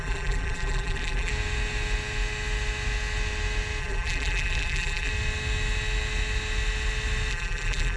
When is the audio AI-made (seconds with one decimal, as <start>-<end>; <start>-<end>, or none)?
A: 0.0-1.3; 3.8-5.1; 7.3-8.0

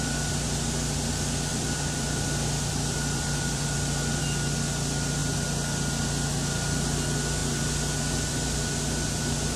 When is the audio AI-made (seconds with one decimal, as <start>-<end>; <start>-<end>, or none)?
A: 1.5-4.2

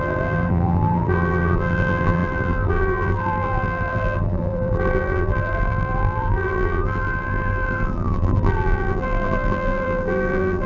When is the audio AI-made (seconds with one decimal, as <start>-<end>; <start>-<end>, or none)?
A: 0.0-10.7